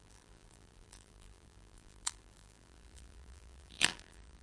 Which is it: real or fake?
fake